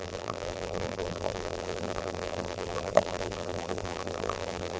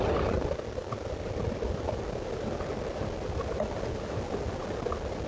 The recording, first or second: second